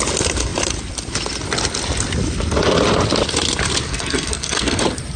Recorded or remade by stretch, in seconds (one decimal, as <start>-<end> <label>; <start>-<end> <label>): 0.0-3.9 recorded; 3.9-4.8 remade; 4.8-5.2 recorded